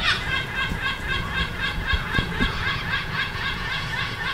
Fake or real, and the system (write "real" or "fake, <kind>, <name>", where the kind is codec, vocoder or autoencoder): fake, vocoder, Vocos